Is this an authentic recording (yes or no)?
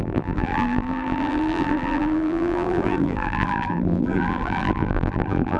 no